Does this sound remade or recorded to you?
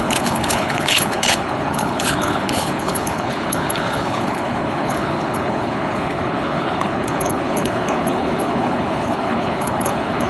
remade